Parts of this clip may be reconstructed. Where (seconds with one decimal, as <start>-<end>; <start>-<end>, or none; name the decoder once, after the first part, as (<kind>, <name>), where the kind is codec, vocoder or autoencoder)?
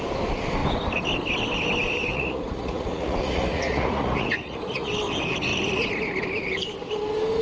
2.1-4.9 (vocoder, Vocos)